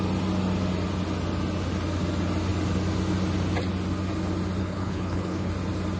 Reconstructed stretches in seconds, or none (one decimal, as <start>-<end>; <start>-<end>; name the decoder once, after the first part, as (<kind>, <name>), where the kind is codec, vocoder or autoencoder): 4.6-5.5 (codec, HILCodec)